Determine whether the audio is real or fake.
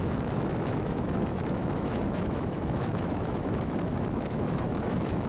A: fake